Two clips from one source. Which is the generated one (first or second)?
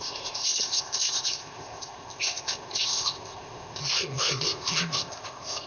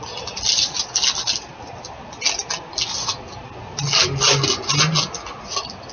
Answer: first